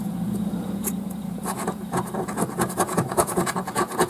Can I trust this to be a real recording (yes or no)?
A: no